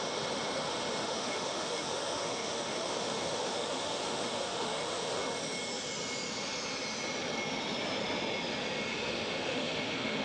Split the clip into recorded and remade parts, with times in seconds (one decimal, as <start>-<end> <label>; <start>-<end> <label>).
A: 0.0-1.0 recorded; 1.0-5.2 remade; 5.2-8.9 recorded; 8.9-10.2 remade